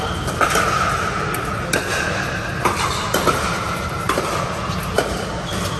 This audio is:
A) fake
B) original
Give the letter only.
B